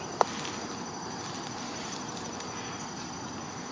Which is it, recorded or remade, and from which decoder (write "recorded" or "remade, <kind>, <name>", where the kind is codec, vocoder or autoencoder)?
recorded